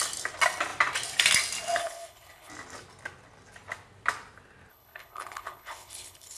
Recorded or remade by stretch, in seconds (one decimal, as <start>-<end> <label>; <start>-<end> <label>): 0.0-1.8 recorded; 1.8-2.5 remade; 2.5-4.7 recorded; 4.7-6.4 remade